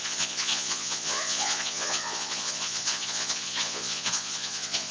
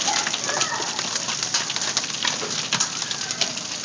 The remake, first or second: first